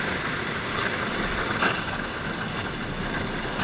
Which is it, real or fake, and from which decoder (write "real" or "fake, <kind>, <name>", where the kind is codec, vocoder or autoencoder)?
fake, vocoder, BigVGAN v2